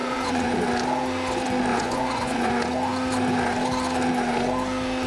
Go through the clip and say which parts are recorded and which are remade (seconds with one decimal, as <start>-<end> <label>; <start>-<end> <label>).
0.0-0.6 remade; 0.6-1.7 recorded; 1.7-2.5 remade; 2.5-5.1 recorded